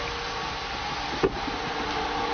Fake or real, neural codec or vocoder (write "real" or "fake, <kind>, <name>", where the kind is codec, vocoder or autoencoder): real